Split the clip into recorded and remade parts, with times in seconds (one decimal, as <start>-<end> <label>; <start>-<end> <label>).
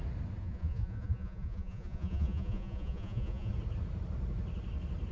0.0-0.4 recorded; 0.4-3.5 remade; 3.5-5.1 recorded